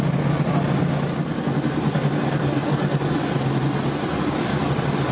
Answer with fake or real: real